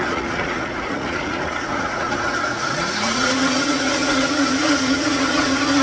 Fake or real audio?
fake